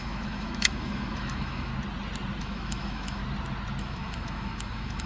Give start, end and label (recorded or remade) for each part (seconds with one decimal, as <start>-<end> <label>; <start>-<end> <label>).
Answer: 0.0-1.7 remade; 1.7-2.4 recorded; 2.4-3.2 remade; 3.2-3.8 recorded; 3.8-5.1 remade